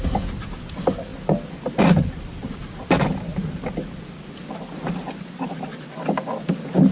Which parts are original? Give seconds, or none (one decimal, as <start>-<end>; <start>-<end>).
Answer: 0.0-6.9